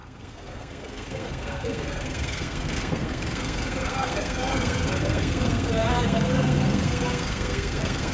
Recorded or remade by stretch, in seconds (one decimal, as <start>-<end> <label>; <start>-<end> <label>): 0.0-8.1 remade